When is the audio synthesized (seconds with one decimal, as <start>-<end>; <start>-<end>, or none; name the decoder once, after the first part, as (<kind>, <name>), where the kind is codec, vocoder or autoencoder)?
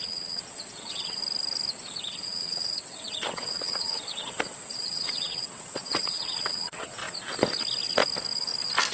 0.0-1.2 (vocoder, WaveNeXt); 2.0-7.0